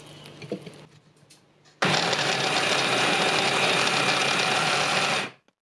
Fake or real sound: real